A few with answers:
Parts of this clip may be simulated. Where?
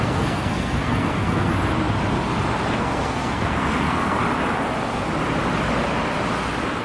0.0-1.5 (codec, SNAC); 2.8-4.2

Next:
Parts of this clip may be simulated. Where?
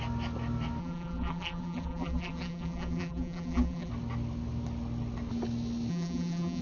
0.8-3.9 (vocoder, BigVGAN v2); 5.9-6.6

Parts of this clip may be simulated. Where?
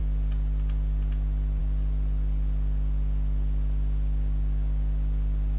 none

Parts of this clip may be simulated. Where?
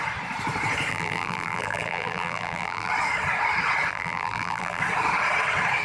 0.9-2.9 (vocoder, BigVGAN v2); 3.9-4.8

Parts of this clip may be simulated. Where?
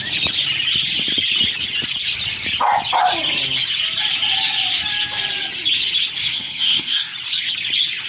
6.2-7.1 (codec, SNAC)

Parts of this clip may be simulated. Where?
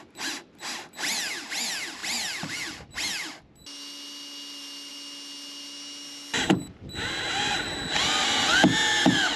none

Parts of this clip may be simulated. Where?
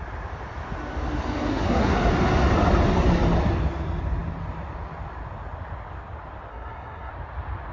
1.5-2.0 (codec, SNAC); 6.5-7.1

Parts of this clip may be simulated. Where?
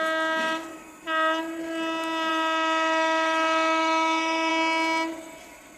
0.7-1.4 (autoencoder, DAC-VAE); 2.3-4.5